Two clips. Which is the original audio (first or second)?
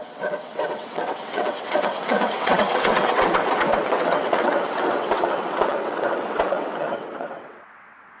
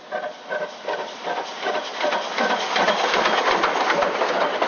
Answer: second